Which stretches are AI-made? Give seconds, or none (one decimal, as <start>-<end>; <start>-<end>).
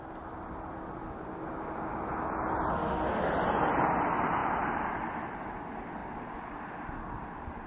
2.7-3.2